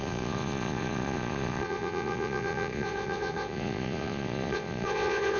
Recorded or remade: remade